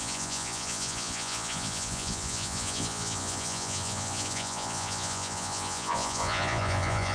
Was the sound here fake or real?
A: fake